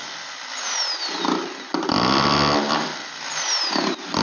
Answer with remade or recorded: recorded